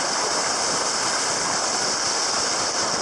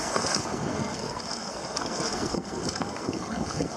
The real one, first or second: first